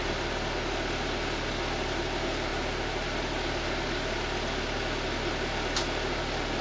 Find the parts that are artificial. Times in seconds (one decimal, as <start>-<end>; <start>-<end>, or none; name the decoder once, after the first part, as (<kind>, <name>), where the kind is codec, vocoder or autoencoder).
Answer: none